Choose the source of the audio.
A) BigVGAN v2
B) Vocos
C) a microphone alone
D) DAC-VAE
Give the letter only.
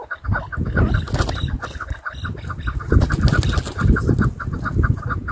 C